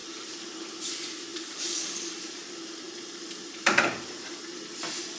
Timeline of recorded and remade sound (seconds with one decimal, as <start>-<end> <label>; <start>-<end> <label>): 0.0-0.9 remade; 0.9-1.3 recorded; 1.3-4.4 remade; 4.4-5.2 recorded